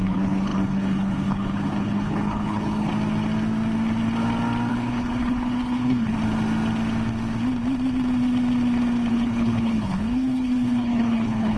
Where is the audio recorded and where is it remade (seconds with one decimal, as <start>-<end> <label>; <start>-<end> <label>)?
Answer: 0.0-2.9 remade; 2.9-4.7 recorded; 4.7-6.1 remade; 6.1-9.1 recorded; 9.1-11.6 remade